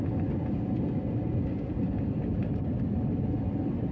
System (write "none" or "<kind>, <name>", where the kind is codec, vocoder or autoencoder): none